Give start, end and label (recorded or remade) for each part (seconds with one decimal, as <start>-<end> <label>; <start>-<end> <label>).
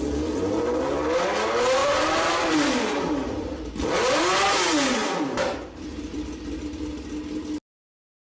0.0-1.8 recorded; 1.8-3.1 remade; 3.1-5.0 recorded; 5.0-6.8 remade; 6.8-8.3 recorded